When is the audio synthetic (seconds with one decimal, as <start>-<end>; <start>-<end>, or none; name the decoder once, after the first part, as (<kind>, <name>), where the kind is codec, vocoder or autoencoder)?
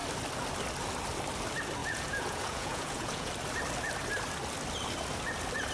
1.8-3.3 (vocoder, Vocos)